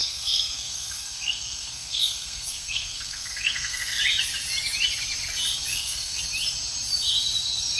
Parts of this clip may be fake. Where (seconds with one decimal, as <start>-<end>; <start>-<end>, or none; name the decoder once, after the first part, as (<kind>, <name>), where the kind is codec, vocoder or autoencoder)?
0.0-4.0 (codec, SNAC); 5.7-6.2